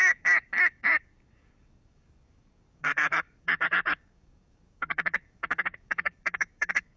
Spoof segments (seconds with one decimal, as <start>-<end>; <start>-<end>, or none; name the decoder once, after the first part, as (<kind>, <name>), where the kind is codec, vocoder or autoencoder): 0.0-7.0 (codec, DAC)